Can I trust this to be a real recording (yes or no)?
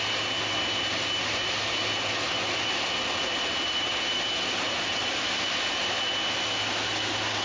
yes